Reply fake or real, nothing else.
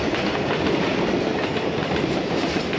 fake